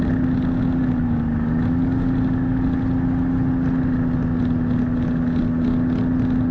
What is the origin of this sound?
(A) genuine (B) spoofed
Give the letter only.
A